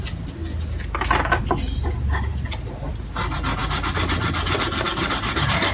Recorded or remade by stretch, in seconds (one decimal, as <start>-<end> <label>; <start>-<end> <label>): 0.0-5.7 recorded